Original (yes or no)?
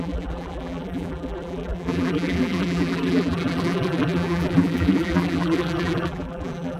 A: no